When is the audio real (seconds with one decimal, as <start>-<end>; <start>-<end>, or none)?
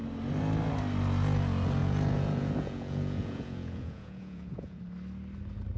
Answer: 0.0-1.8; 4.8-5.8